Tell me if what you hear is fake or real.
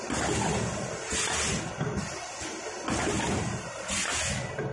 real